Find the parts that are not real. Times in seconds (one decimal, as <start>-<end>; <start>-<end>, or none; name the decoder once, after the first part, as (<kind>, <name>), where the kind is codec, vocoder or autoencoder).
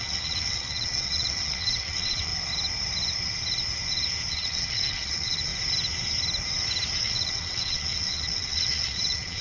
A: 0.0-2.3 (vocoder, WaveNeXt); 4.3-5.5; 7.0-9.4